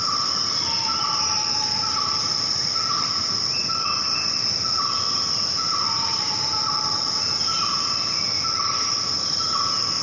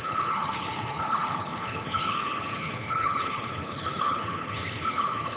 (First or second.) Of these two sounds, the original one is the first